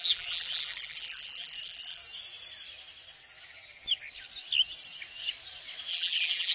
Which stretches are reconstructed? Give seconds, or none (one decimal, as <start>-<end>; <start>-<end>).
0.0-2.0; 5.9-6.5